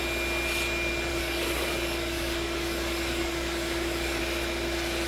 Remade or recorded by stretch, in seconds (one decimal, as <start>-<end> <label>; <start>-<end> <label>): 0.0-1.1 recorded; 1.1-4.2 remade; 4.2-5.1 recorded

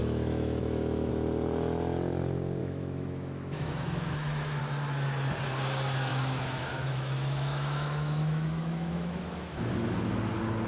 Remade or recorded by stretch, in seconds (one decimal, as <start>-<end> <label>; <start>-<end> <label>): 0.0-1.1 remade; 1.1-2.6 recorded; 2.6-4.6 remade; 4.6-6.1 recorded; 6.1-9.7 remade; 9.7-10.7 recorded